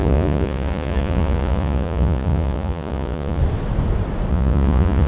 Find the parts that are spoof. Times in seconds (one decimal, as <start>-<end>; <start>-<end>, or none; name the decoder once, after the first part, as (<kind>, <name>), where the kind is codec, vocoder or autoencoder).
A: 0.0-3.4 (vocoder, Vocos); 4.3-5.1